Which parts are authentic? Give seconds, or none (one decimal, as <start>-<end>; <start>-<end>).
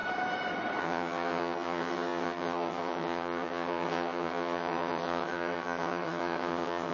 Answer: 0.0-0.8